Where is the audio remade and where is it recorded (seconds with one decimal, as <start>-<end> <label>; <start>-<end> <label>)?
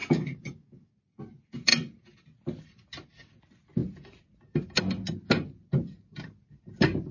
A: 0.0-0.9 remade; 0.9-7.1 recorded